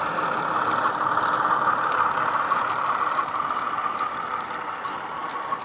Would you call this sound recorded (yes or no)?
yes